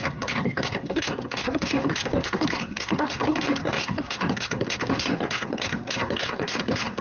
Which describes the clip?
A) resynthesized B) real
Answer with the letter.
A